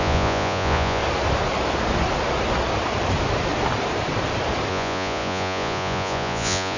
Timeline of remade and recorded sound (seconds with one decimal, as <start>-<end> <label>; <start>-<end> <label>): 0.0-1.0 remade; 1.0-4.7 recorded; 4.7-6.8 remade